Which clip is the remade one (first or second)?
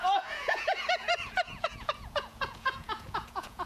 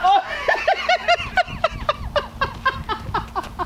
first